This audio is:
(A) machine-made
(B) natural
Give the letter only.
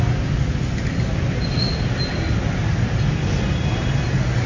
B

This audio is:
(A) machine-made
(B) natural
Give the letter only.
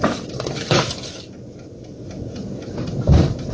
B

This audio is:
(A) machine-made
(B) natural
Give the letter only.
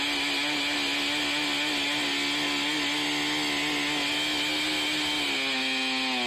B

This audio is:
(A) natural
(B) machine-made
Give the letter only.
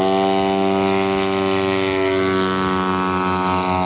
A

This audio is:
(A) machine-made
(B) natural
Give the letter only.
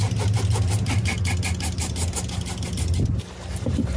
B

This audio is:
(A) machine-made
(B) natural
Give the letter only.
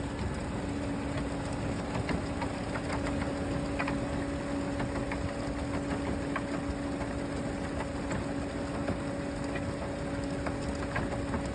B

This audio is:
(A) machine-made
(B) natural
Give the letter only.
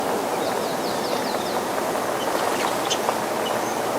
B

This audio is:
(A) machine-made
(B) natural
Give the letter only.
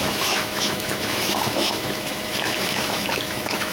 A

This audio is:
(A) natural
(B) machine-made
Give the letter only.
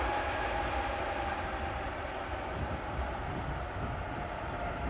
A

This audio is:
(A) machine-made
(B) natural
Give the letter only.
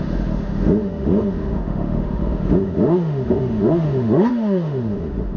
A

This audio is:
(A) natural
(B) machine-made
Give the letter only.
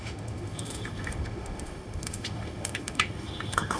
B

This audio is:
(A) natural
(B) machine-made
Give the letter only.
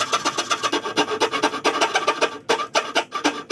A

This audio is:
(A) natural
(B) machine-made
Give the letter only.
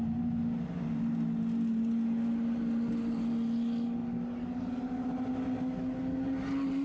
A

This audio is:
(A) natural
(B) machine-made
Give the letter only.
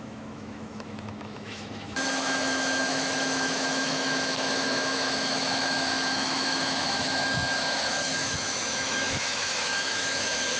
B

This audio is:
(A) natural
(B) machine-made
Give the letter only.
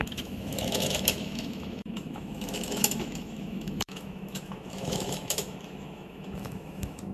B